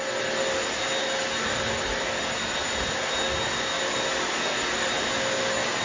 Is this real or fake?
real